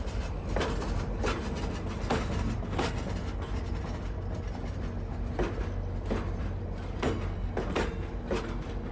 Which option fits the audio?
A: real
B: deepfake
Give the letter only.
A